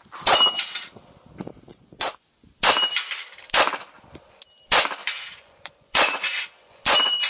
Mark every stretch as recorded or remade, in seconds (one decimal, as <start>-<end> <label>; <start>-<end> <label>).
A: 0.0-1.7 recorded; 1.7-2.3 remade; 2.3-5.0 recorded; 5.0-7.3 remade